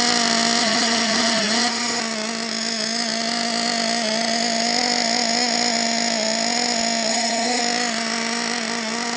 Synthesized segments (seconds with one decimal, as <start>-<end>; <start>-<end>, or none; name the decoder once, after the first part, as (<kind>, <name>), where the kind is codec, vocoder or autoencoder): 0.6-2.0 (vocoder, HiFi-GAN); 7.1-7.6